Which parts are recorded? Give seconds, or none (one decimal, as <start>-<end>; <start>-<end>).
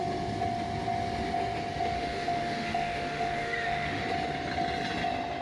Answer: 0.0-2.0; 4.0-5.4